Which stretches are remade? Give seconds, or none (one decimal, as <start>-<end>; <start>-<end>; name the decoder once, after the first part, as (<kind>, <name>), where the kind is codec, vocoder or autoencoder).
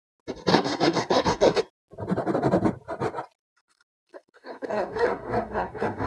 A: 0.5-1.6 (codec, SNAC); 3.4-6.1